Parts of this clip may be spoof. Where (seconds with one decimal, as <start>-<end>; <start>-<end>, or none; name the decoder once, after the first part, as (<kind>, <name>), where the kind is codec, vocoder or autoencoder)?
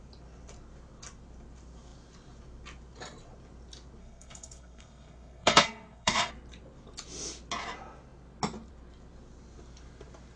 4.0-6.3 (codec, SNAC)